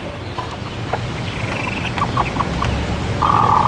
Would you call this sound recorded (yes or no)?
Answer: yes